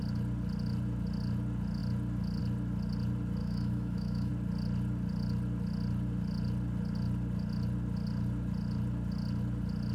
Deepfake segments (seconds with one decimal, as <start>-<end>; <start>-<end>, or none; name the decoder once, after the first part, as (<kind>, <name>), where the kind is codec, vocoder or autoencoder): 3.4-4.3 (autoencoder, DAC-VAE)